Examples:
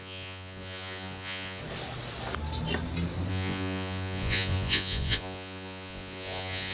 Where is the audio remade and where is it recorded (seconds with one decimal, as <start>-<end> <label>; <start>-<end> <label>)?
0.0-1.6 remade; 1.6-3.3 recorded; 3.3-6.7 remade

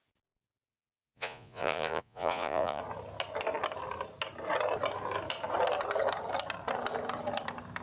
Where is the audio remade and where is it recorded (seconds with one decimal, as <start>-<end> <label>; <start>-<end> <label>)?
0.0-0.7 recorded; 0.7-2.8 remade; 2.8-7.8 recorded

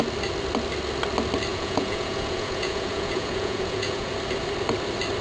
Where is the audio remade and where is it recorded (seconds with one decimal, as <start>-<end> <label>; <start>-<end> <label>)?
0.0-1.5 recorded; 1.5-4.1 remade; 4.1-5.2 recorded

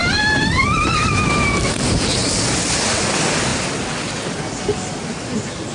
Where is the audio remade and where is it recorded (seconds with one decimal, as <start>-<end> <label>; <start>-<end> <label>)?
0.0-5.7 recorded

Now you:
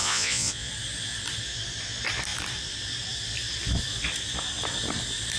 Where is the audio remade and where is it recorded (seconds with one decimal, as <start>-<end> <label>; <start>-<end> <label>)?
0.0-0.7 remade; 0.7-5.4 recorded

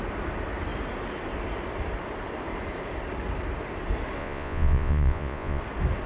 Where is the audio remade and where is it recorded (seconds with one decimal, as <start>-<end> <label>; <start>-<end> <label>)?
0.0-4.2 recorded; 4.2-5.6 remade; 5.6-6.1 recorded